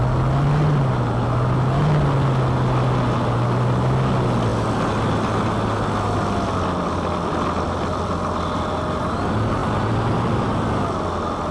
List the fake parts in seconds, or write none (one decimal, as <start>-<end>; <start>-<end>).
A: none